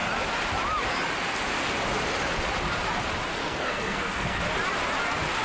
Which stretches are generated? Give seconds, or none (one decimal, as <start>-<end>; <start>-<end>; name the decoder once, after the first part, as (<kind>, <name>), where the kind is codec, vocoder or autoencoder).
3.4-4.4 (codec, SNAC)